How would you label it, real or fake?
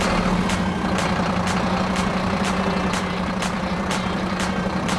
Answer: fake